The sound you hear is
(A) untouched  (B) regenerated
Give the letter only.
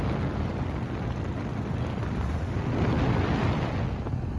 A